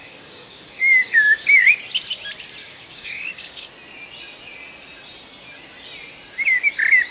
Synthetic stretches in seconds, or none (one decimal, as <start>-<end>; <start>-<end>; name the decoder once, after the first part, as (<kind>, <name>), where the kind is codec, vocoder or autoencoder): 0.0-1.6 (codec, DAC); 2.6-3.7